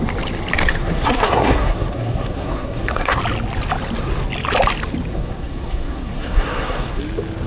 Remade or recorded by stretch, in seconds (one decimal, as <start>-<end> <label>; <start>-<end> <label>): 0.0-0.8 recorded; 0.8-3.2 remade; 3.2-5.1 recorded; 5.1-7.0 remade; 7.0-7.5 recorded

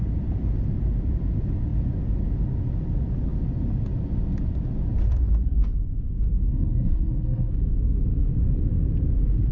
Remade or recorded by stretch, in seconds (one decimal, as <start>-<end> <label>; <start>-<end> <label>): 0.0-6.5 recorded; 6.5-7.5 remade; 7.5-9.5 recorded

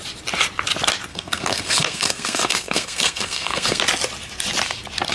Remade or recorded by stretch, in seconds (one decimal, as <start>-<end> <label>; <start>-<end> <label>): 0.0-1.1 recorded; 1.1-3.8 remade; 3.8-5.1 recorded

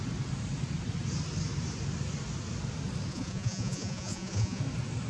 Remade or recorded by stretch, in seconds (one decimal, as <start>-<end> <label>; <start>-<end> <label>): 0.0-3.1 recorded; 3.1-4.6 remade; 4.6-5.1 recorded

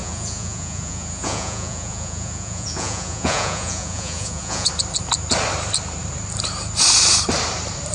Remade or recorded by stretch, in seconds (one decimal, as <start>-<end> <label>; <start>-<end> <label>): 0.0-4.7 remade; 4.7-7.9 recorded

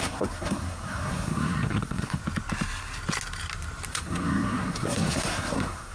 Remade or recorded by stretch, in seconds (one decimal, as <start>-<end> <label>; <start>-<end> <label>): 0.0-2.2 remade; 2.2-3.9 recorded; 3.9-5.9 remade

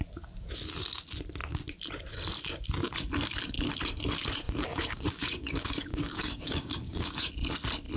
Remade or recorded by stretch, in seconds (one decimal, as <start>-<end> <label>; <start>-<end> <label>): 0.0-4.7 recorded; 4.7-7.3 remade; 7.3-8.0 recorded

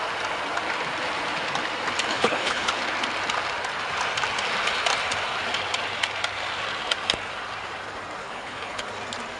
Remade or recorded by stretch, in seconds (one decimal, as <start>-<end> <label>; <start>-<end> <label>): 0.0-2.1 recorded; 2.1-2.7 remade; 2.7-8.2 recorded; 8.2-8.8 remade; 8.8-9.4 recorded